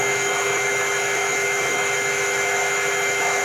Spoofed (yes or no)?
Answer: yes